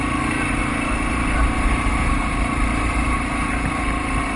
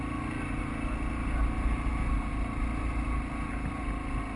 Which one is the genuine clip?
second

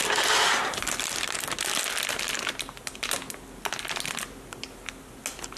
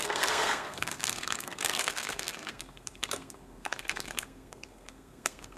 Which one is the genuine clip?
first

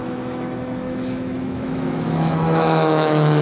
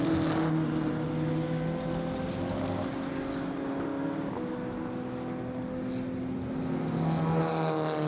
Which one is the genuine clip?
second